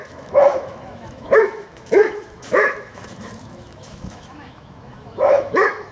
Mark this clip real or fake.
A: fake